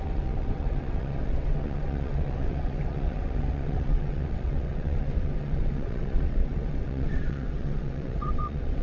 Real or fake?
fake